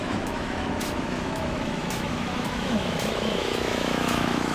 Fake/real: fake